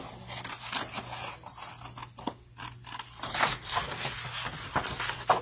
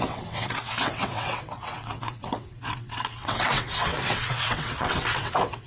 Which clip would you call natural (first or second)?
first